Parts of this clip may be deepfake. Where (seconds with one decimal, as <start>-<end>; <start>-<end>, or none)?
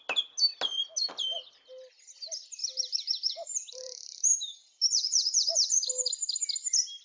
2.6-6.4